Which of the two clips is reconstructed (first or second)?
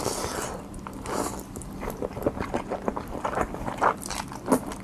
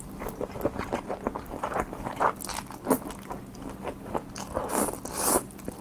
first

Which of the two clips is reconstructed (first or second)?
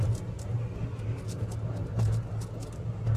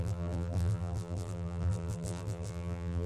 second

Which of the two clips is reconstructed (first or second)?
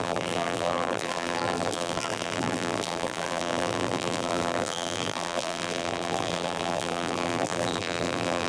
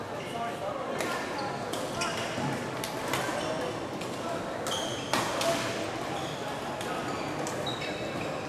first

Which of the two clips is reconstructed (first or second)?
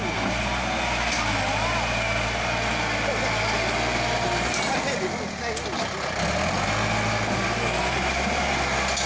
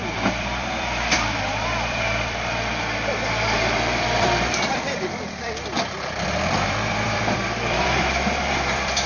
second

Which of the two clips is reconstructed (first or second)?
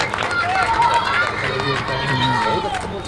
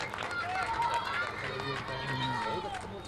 first